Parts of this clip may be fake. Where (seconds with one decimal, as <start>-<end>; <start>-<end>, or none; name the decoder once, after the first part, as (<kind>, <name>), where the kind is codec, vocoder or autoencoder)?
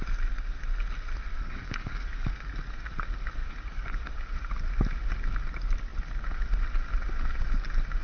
1.3-2.5 (codec, DAC); 3.4-4.1